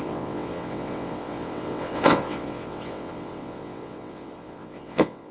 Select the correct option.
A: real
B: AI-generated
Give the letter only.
B